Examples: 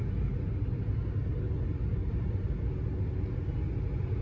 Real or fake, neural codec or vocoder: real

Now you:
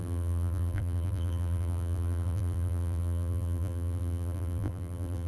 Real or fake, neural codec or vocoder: fake, vocoder, BigVGAN v2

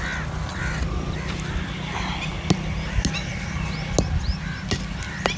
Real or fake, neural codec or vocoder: real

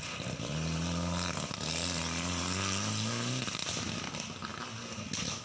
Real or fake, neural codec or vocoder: real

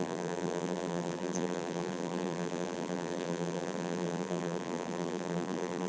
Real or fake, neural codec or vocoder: fake, vocoder, BigVGAN v2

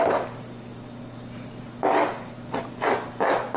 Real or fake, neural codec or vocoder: real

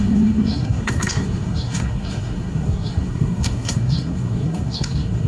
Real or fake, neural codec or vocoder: fake, codec, SNAC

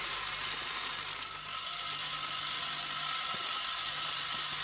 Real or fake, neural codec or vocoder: real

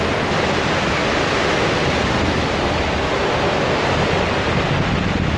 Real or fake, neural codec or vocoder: real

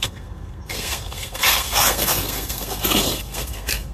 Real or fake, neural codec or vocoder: fake, codec, SNAC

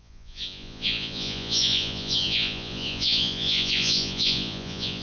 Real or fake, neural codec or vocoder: fake, vocoder, Vocos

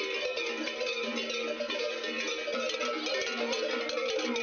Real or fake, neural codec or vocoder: real